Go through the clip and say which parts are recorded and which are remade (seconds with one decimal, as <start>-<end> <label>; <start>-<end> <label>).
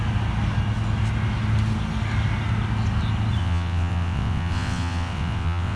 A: 0.0-3.4 recorded; 3.4-5.8 remade